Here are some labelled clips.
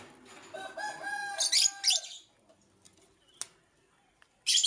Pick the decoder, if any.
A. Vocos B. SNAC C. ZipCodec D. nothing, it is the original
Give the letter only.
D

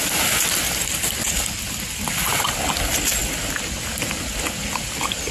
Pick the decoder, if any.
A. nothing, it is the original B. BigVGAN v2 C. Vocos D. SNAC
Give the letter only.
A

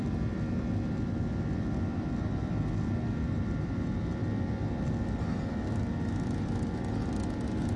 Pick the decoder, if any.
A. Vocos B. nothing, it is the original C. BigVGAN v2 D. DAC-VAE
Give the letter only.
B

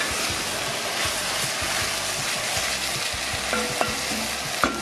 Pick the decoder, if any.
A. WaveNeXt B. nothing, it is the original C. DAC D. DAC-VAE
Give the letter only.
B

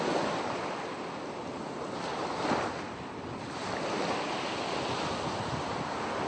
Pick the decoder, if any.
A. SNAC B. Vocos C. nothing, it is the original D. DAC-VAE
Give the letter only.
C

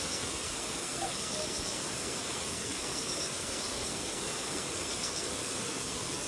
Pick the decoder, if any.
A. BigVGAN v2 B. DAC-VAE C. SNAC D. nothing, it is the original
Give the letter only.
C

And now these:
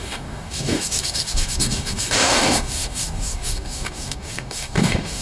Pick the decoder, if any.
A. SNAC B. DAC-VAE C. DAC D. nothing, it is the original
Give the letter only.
C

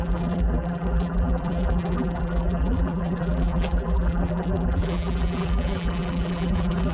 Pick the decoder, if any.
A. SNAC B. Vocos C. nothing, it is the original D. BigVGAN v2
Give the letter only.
D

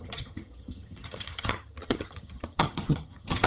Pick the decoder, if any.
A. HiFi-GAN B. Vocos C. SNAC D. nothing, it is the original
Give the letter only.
A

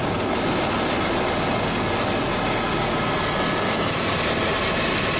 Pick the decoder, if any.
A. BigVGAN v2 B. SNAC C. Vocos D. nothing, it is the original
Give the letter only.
D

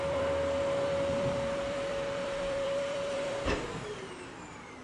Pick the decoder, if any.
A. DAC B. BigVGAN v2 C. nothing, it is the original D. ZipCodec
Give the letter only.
B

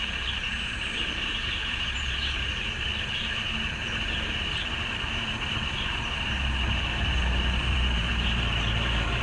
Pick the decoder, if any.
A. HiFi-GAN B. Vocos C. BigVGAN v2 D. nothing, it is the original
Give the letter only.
C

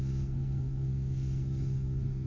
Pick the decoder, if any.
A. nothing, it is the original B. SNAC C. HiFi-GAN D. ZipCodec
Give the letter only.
B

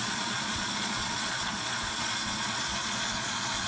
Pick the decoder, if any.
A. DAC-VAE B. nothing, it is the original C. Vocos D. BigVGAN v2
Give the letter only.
C